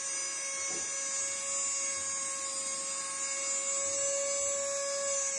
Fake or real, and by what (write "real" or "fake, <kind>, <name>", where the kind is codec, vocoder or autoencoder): real